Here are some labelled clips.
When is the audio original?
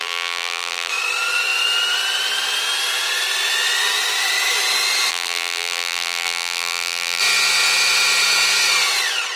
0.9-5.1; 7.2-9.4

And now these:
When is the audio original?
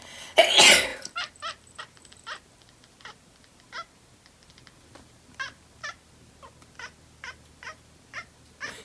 0.0-8.8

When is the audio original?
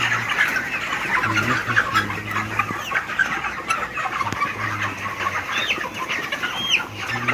0.0-7.3